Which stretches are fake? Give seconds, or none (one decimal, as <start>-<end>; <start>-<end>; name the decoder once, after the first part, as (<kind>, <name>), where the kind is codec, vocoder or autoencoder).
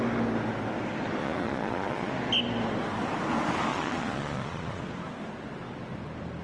1.2-2.1 (vocoder, Vocos); 3.7-4.8